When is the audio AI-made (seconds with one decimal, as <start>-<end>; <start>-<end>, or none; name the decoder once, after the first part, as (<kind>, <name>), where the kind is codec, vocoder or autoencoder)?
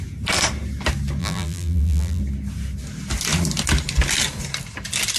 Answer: 1.2-2.2 (vocoder, BigVGAN v2)